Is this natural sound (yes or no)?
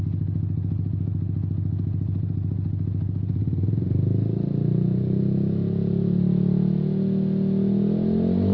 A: yes